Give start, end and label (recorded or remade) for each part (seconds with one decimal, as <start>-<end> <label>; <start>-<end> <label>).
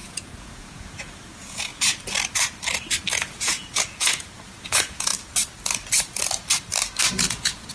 0.0-1.7 remade; 1.7-3.1 recorded; 3.1-5.1 remade; 5.1-7.1 recorded; 7.1-7.7 remade